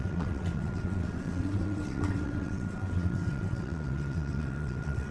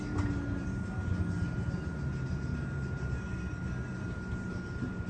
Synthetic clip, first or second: first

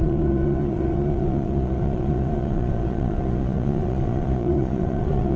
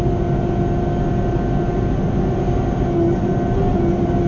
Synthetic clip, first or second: first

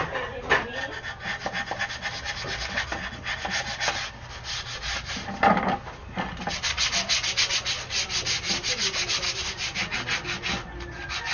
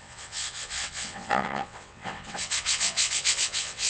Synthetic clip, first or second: second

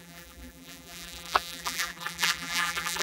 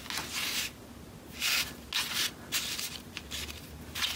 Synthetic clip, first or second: first